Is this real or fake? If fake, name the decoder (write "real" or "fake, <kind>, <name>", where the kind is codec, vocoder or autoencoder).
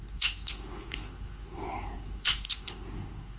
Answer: fake, codec, SNAC